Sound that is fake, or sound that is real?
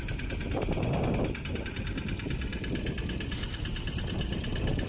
real